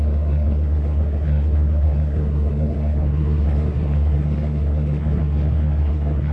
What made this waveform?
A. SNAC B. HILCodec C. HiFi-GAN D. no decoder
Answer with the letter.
A